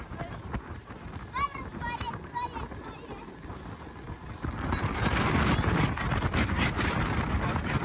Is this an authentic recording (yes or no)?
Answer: yes